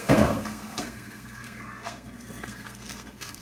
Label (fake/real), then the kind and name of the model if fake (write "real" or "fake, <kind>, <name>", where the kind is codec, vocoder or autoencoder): fake, codec, SNAC